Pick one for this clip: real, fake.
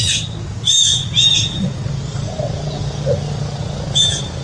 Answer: real